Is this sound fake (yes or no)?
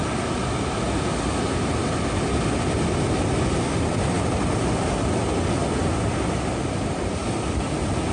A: no